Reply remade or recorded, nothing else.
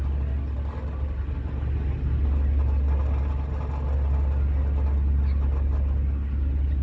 recorded